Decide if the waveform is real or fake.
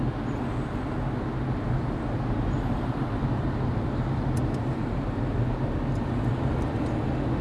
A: real